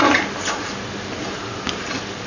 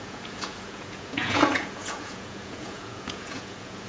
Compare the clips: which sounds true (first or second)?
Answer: first